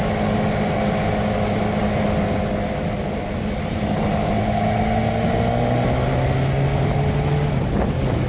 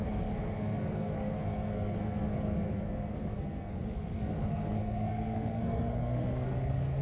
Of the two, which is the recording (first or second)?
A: first